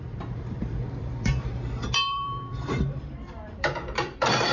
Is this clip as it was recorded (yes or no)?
no